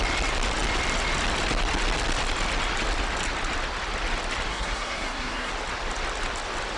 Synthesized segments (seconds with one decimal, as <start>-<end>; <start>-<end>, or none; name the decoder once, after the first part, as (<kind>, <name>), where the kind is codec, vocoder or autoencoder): 4.5-5.5 (codec, SNAC)